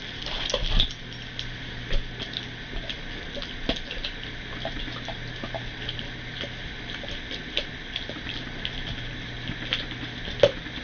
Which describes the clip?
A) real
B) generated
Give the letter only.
A